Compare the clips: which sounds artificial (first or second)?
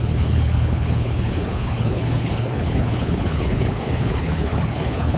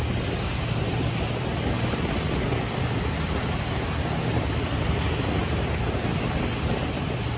first